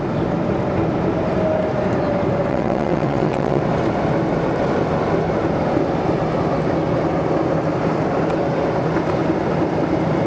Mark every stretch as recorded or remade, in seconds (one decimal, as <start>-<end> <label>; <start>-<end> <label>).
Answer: 0.0-2.5 recorded; 2.5-3.6 remade; 3.6-10.3 recorded